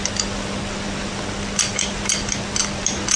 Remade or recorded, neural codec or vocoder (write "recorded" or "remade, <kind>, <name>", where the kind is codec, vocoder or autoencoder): recorded